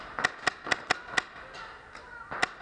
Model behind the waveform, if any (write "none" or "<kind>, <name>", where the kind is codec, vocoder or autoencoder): none